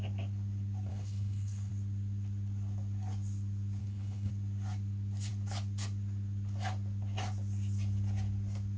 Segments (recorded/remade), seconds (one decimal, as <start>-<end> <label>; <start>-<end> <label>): 0.0-0.9 recorded; 0.9-1.7 remade; 1.7-3.8 recorded; 3.8-4.3 remade; 4.3-8.8 recorded